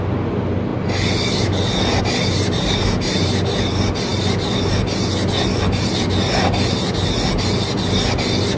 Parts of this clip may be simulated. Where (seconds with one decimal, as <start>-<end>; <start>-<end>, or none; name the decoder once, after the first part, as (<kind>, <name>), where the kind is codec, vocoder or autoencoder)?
none

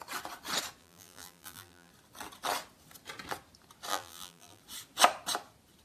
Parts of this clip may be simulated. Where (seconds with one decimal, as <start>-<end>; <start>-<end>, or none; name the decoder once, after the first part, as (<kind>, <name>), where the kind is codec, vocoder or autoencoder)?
0.8-1.9 (vocoder, BigVGAN v2); 3.9-4.6

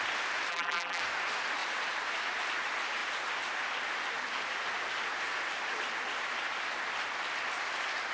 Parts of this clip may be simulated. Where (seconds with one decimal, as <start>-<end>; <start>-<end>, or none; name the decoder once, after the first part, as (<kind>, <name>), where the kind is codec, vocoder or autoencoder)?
0.5-1.0 (vocoder, BigVGAN v2)

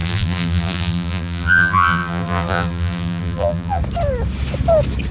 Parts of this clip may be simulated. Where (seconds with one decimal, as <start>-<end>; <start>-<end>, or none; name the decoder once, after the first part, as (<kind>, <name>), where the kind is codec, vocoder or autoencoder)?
0.0-3.8 (vocoder, BigVGAN v2)

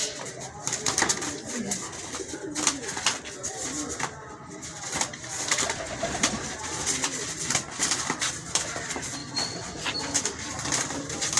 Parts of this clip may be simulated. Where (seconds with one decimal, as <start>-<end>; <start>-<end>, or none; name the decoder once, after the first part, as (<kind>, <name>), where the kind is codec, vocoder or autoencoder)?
4.9-11.4 (vocoder, BigVGAN v2)

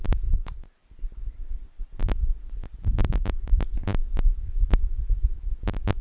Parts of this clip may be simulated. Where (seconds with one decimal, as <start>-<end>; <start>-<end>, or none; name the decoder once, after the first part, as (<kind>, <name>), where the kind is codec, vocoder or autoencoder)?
0.0-4.0 (vocoder, BigVGAN v2); 4.7-6.0

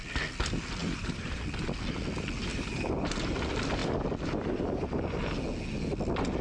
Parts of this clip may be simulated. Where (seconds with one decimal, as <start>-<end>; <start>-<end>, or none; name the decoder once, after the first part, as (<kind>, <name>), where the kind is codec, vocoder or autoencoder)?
0.8-1.4 (vocoder, BigVGAN v2); 2.5-3.1

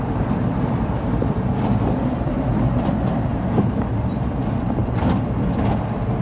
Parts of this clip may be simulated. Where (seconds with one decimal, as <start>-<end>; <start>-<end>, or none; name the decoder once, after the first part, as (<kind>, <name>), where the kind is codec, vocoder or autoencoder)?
3.3-4.1 (vocoder, BigVGAN v2)